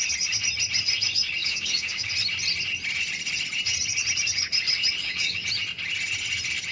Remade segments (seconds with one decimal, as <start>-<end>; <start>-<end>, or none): 1.4-2.1; 5.0-5.5